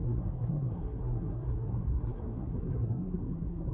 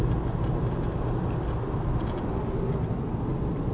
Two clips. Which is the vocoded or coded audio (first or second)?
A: first